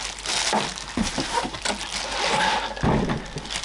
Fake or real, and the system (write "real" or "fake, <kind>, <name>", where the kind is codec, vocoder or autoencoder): real